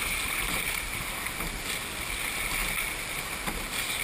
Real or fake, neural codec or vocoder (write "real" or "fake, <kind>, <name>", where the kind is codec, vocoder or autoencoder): real